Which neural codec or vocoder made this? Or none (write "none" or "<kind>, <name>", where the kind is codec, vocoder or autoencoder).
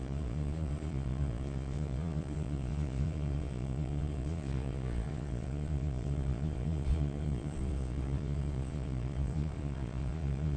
vocoder, Vocos